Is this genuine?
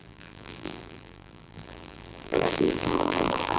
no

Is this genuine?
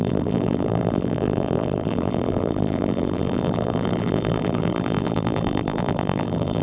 no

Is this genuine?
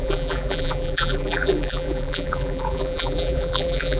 no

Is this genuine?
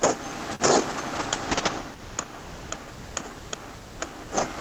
yes